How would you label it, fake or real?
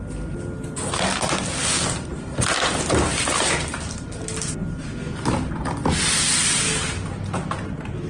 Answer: real